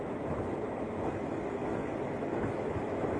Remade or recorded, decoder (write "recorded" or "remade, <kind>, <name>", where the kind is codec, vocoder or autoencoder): remade, autoencoder, DAC-VAE